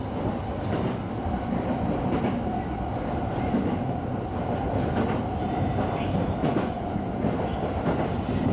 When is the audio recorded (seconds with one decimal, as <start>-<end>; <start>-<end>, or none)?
0.0-6.4; 7.0-8.5

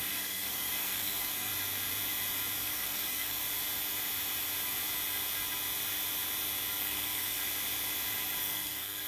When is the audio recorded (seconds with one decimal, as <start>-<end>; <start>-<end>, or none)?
1.5-2.6; 3.4-6.8; 7.4-8.4

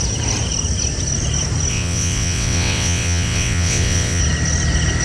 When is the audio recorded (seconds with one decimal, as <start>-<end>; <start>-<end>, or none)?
0.0-1.7; 4.2-5.0

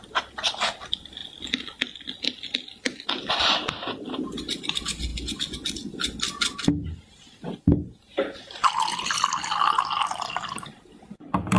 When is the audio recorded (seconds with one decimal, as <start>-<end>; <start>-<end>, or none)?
0.0-11.6

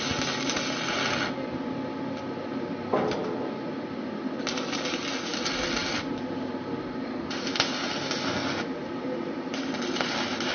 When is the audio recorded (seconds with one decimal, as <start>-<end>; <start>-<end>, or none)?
0.0-10.5

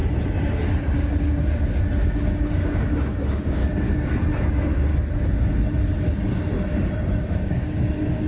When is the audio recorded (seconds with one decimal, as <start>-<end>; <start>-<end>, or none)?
0.0-2.5; 3.6-4.5; 4.9-7.4

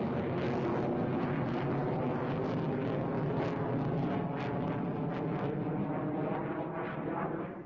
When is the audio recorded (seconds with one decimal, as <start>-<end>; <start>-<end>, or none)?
0.0-7.7